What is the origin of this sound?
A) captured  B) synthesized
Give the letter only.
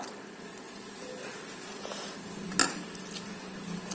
A